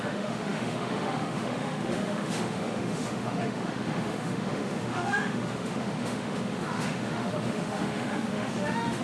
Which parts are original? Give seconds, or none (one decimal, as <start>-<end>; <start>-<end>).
none

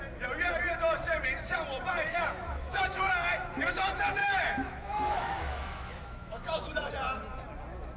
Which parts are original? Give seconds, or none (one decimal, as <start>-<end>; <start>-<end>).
0.0-2.1; 3.1-4.2; 6.9-8.0

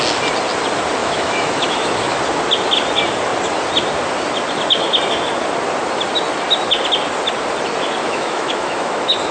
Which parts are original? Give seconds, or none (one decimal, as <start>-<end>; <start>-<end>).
0.0-1.0; 2.2-8.0

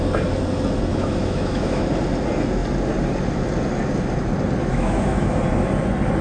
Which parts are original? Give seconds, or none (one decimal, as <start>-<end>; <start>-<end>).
0.0-0.9; 1.8-4.7; 5.4-6.2

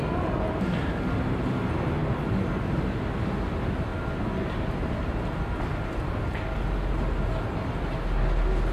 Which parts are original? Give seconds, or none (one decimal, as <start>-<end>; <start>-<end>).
0.0-8.7

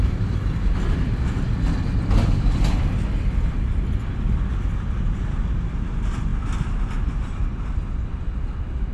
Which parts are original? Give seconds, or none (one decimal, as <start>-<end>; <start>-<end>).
0.0-8.9